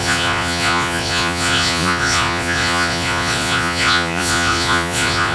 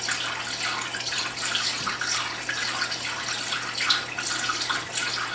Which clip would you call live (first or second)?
second